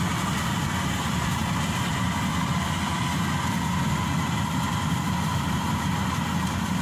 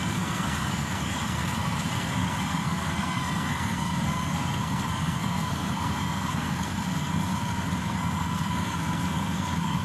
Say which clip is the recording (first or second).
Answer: first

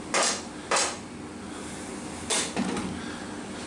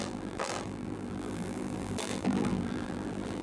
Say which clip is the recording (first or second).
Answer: first